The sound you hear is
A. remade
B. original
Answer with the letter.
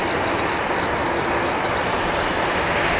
B